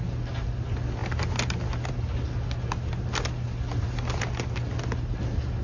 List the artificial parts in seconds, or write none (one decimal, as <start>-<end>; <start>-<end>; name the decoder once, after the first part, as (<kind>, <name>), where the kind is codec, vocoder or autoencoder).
none